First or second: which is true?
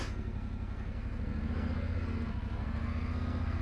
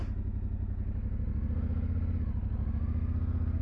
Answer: second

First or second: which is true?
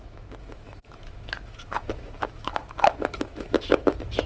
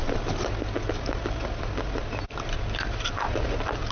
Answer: second